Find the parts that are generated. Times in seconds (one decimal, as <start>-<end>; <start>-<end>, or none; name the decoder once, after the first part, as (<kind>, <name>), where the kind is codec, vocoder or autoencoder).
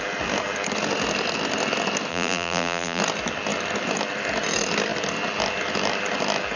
2.1-3.0 (vocoder, BigVGAN v2)